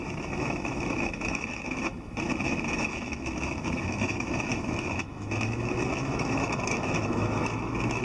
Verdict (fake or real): fake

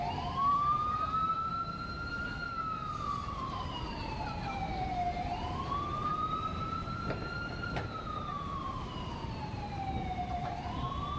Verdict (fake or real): fake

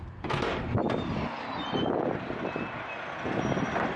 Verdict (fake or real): real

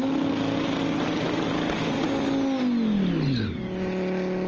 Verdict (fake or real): real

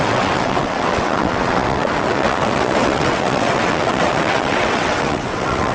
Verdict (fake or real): fake